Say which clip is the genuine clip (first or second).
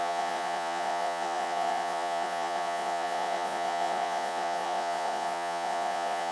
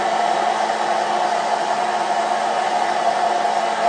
second